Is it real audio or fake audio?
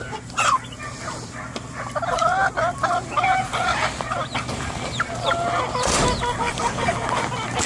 real